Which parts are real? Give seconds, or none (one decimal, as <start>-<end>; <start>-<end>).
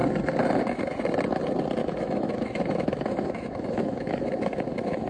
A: 0.0-1.8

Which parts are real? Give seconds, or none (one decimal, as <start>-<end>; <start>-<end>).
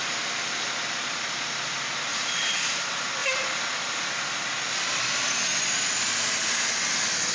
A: 0.0-2.1; 2.7-7.3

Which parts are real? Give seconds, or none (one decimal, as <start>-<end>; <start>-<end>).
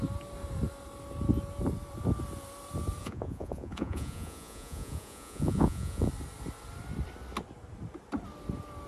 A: 0.0-3.0; 6.1-8.9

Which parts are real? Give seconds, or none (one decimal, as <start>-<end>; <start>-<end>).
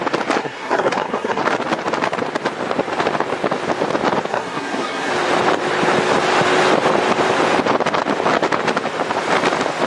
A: 0.0-0.4; 1.4-4.3; 5.1-9.9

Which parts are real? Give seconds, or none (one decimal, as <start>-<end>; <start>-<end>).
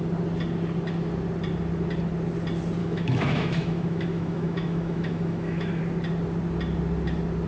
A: 0.0-2.8; 5.8-7.5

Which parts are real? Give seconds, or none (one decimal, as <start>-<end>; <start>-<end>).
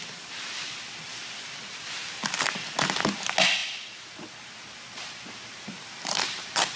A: 0.0-6.8